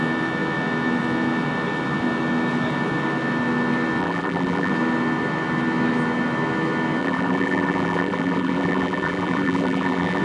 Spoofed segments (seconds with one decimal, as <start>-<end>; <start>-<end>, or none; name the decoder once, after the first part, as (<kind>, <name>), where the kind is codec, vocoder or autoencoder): 4.0-4.7 (vocoder, BigVGAN v2); 7.0-10.2